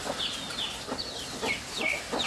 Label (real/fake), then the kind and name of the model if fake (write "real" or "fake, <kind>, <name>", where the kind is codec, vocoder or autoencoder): real